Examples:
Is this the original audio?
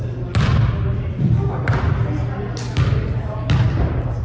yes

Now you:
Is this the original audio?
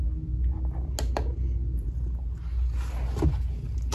yes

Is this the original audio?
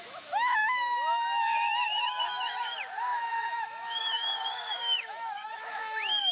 no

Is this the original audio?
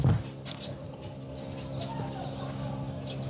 yes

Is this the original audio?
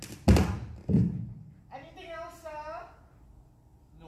yes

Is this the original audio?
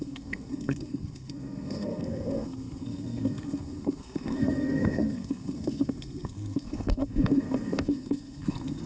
no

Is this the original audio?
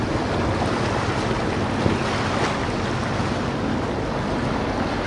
yes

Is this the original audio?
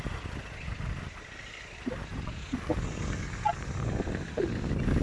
yes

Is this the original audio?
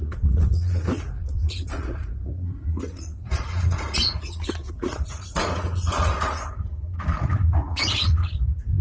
no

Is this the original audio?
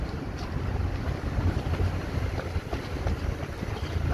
yes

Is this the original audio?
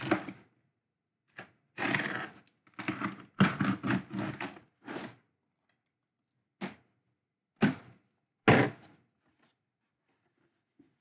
yes